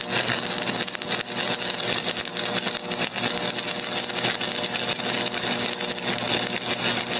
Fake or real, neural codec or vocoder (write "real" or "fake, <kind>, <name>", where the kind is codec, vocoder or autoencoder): real